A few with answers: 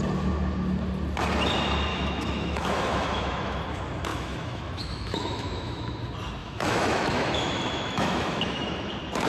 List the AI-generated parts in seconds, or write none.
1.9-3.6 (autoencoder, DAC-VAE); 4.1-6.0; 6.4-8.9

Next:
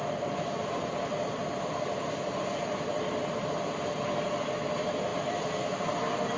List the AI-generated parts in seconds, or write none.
none

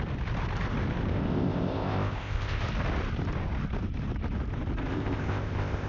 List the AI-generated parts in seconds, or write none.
1.1-2.6 (codec, ZipCodec); 4.9-5.9